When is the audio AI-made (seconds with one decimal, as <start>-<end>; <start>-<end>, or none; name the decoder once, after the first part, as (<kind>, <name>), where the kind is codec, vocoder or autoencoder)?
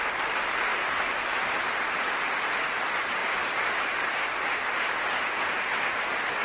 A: 0.0-6.4 (vocoder, BigVGAN v2)